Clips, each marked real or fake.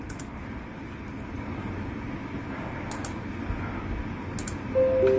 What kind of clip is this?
real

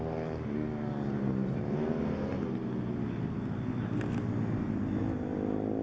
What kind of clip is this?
real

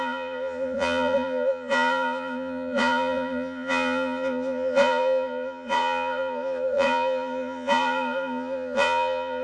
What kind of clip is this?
fake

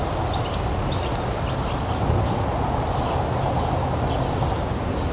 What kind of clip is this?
real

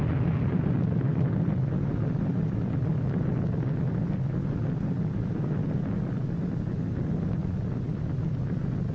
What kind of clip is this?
real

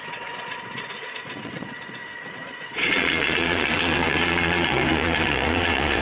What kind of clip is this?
fake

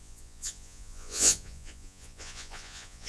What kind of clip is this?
fake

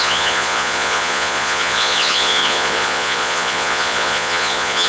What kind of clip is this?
fake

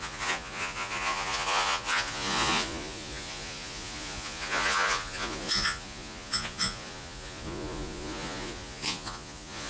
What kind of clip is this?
fake